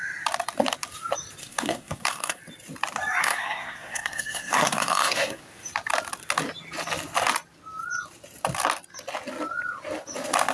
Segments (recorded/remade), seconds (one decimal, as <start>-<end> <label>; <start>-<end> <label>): 0.0-1.4 recorded; 1.4-2.4 remade; 2.4-3.2 recorded; 3.2-5.4 remade; 5.4-10.5 recorded